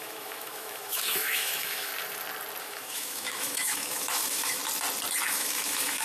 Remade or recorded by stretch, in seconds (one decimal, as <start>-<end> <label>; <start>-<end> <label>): 0.0-1.9 remade; 1.9-2.6 recorded; 2.6-4.6 remade; 4.6-5.3 recorded; 5.3-6.0 remade